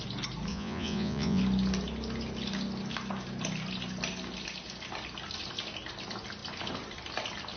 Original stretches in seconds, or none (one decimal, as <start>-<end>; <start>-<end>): 0.0-0.5; 1.4-7.6